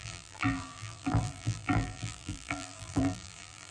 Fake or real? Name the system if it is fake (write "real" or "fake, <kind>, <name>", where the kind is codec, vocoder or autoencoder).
fake, vocoder, BigVGAN v2